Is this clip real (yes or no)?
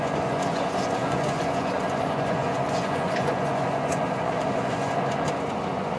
no